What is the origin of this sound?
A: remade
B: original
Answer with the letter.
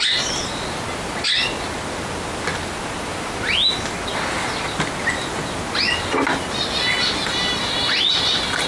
B